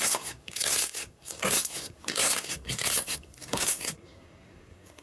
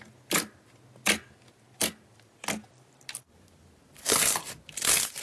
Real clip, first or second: second